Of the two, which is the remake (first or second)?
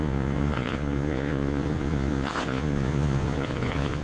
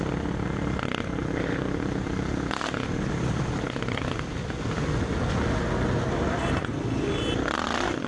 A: first